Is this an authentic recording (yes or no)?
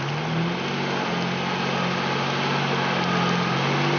yes